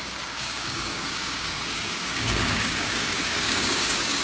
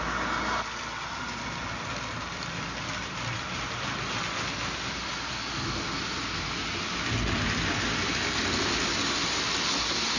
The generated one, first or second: first